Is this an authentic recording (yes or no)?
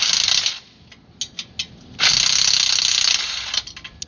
yes